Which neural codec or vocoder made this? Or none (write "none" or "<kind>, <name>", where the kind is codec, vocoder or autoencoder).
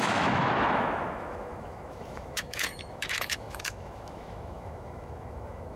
autoencoder, DAC-VAE